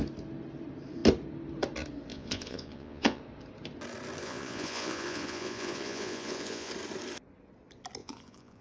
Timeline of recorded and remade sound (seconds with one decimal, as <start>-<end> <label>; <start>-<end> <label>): 0.0-2.1 recorded; 2.1-3.2 remade; 3.2-4.2 recorded; 4.2-6.7 remade; 6.7-8.0 recorded; 8.0-8.6 remade